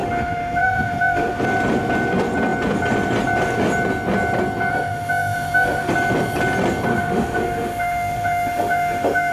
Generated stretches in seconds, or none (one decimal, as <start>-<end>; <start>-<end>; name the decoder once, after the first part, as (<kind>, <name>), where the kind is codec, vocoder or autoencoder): 0.0-1.4 (autoencoder, DAC-VAE); 4.7-5.9; 6.9-9.3